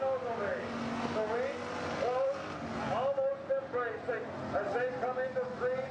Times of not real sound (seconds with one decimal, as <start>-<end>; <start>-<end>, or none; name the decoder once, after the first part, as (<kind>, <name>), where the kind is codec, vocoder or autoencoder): 0.0-0.5 (vocoder, BigVGAN v2); 3.3-5.9